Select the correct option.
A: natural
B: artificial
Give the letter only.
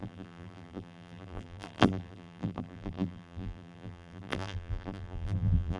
B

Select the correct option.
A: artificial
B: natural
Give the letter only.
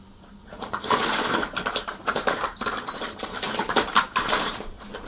A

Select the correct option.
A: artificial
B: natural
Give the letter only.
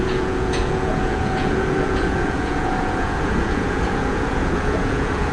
A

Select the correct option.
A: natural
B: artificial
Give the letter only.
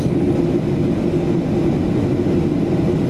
A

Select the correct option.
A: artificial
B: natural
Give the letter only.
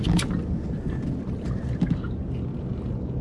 B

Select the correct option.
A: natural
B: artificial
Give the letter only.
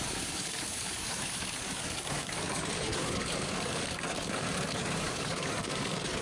B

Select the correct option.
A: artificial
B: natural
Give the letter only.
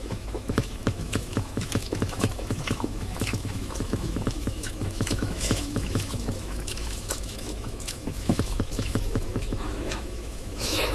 A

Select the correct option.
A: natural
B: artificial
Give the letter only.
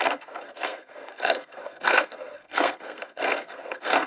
B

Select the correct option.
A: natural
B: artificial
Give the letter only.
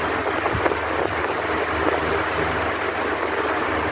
A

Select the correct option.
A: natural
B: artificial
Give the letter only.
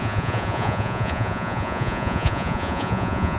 B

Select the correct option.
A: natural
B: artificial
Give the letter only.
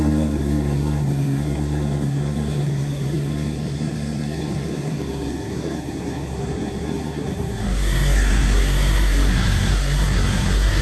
B